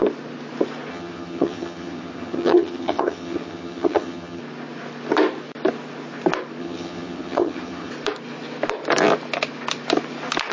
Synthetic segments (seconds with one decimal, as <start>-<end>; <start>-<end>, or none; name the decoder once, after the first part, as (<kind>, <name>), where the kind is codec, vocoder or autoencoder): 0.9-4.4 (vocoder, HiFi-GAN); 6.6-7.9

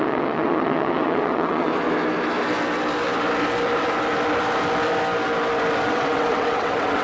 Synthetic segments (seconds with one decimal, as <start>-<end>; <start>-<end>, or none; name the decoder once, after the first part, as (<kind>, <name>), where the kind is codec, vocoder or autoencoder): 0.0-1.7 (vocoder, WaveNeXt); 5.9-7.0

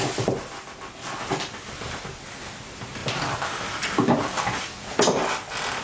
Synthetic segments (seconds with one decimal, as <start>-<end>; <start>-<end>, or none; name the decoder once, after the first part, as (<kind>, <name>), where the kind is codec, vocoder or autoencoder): none

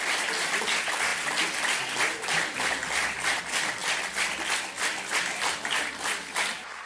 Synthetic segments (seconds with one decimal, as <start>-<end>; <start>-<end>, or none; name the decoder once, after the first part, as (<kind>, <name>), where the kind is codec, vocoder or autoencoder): none

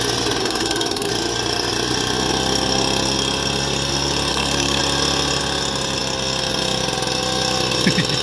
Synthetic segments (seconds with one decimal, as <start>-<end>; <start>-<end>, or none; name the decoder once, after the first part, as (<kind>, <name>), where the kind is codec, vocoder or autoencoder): 0.4-1.1 (codec, SNAC); 4.3-4.8

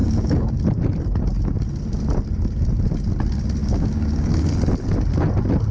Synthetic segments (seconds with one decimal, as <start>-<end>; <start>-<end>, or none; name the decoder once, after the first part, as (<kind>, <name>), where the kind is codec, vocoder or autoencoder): 0.0-0.5 (codec, DAC); 3.6-4.5

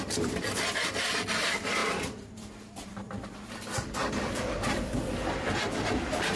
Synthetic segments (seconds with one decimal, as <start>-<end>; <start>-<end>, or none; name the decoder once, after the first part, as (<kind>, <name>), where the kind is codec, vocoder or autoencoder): 1.8-5.6 (vocoder, BigVGAN v2)